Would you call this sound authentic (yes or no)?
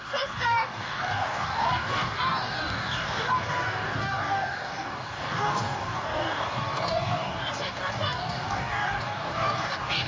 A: no